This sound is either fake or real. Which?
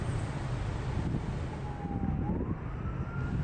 real